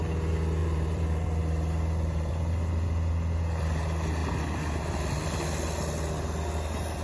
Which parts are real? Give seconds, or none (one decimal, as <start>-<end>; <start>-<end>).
0.0-0.6; 1.4-7.0